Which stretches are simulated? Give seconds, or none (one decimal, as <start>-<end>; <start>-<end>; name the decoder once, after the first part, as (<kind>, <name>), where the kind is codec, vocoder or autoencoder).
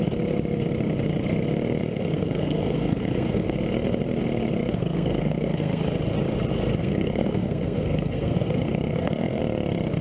1.8-3.6 (codec, SNAC); 4.6-5.8; 6.8-9.4